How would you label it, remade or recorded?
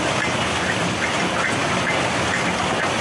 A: recorded